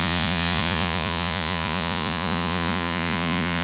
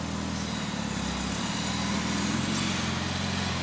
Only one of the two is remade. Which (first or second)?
first